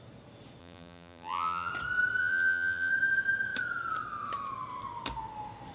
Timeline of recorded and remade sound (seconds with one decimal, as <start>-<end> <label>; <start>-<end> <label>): 0.0-0.6 recorded; 0.6-1.7 remade; 1.7-2.2 recorded; 2.2-2.9 remade; 2.9-5.7 recorded

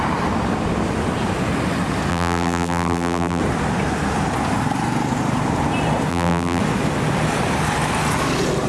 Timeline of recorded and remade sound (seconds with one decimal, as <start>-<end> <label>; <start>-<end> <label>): 0.0-2.1 recorded; 2.1-3.4 remade; 3.4-6.1 recorded; 6.1-6.6 remade; 6.6-8.7 recorded

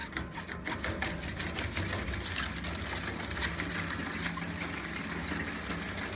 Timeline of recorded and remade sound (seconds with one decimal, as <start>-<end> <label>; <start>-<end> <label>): 0.0-3.7 remade; 3.7-6.1 recorded

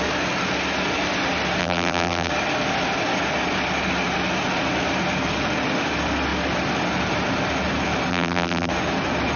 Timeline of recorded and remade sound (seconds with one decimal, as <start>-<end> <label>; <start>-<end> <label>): 0.0-1.6 recorded; 1.6-2.3 remade; 2.3-8.1 recorded; 8.1-8.7 remade; 8.7-9.4 recorded

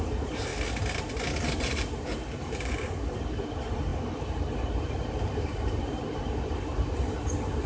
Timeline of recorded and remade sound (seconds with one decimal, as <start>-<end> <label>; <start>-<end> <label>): 0.0-0.5 remade; 0.5-1.6 recorded; 1.6-7.7 remade

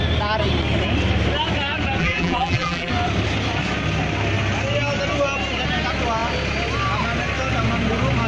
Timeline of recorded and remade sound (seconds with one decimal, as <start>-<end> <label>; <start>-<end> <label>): 0.0-2.0 recorded; 2.0-2.9 remade; 2.9-8.3 recorded

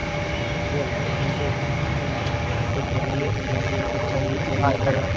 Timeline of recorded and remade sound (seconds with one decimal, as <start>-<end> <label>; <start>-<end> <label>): 0.0-2.7 recorded; 2.7-5.2 remade